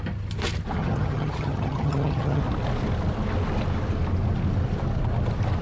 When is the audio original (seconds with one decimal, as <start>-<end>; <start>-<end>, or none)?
0.0-0.8; 2.4-5.6